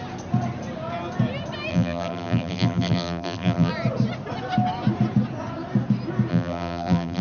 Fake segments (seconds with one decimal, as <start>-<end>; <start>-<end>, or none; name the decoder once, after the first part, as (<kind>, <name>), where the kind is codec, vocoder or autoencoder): 1.7-3.7 (vocoder, BigVGAN v2); 6.3-7.2